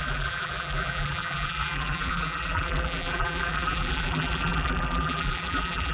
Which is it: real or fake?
fake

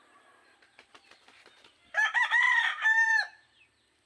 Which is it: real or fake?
fake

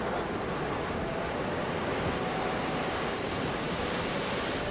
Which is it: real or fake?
real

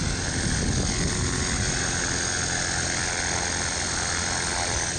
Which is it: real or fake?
real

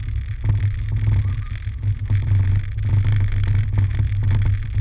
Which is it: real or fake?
real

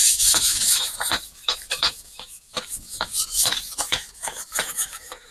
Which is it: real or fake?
fake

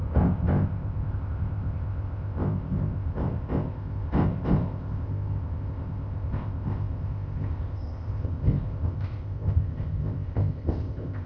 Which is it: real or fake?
fake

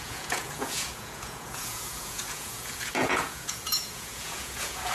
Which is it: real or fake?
fake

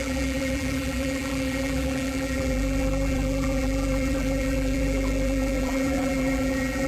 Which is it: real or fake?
fake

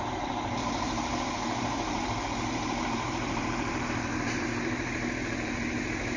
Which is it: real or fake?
fake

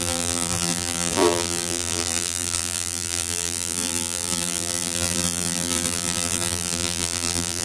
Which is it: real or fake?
fake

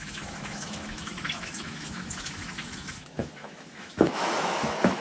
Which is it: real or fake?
fake